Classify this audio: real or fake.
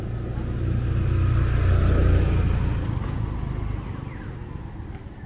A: real